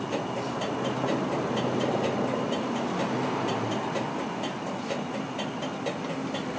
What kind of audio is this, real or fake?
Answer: real